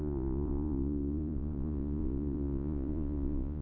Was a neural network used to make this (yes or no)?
yes